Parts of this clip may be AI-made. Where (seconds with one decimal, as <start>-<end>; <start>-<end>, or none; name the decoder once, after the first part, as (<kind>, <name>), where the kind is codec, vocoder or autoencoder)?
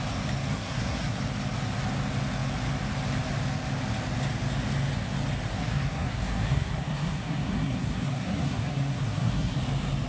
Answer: 0.5-1.2 (codec, SNAC); 5.5-9.6